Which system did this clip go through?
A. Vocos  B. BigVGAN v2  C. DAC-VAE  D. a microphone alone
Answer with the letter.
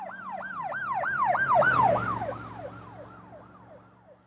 D